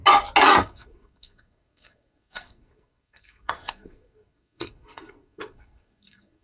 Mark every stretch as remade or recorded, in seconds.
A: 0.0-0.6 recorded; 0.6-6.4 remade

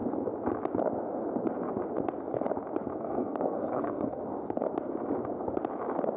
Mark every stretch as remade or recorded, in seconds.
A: 0.0-2.9 recorded; 2.9-4.2 remade; 4.2-6.2 recorded